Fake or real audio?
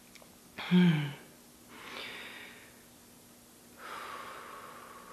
real